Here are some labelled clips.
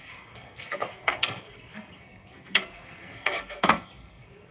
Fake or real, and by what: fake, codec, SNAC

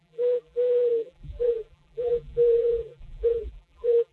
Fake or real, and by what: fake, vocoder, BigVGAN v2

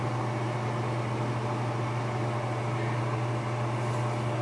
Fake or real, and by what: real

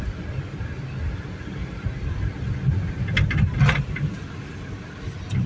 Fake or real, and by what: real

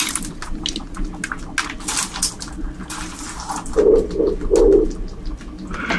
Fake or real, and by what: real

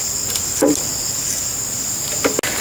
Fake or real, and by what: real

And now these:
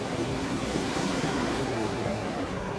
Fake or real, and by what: fake, codec, SNAC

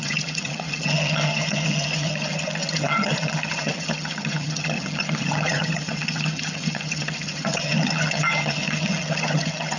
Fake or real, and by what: fake, vocoder, HiFi-GAN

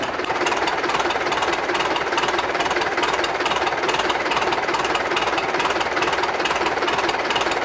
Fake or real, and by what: fake, vocoder, BigVGAN v2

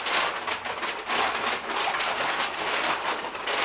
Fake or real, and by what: real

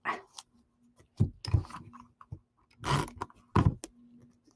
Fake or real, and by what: real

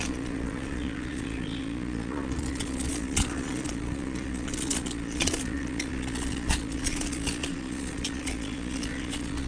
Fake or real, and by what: fake, vocoder, Vocos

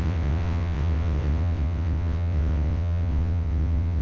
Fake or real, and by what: fake, vocoder, WaveNeXt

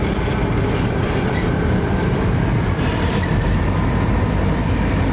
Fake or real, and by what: fake, vocoder, BigVGAN v2